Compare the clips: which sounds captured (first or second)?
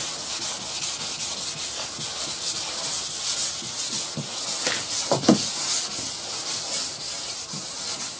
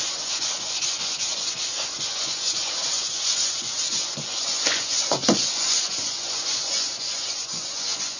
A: first